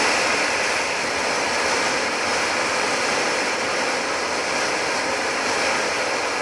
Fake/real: real